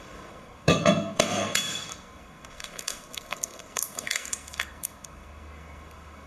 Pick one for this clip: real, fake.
fake